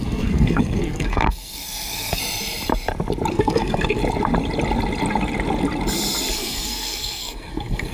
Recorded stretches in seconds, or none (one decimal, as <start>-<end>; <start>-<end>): 2.2-3.3; 4.0-6.3